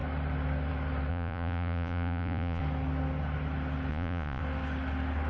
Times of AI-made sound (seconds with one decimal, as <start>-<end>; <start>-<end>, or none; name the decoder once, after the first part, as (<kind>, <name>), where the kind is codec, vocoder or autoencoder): 1.1-2.6 (vocoder, Vocos); 3.9-4.4